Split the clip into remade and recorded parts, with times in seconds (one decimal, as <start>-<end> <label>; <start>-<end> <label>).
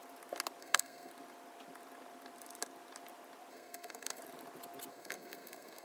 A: 0.0-0.6 recorded; 0.6-1.1 remade; 1.1-3.5 recorded; 3.5-4.2 remade; 4.2-4.9 recorded; 4.9-5.8 remade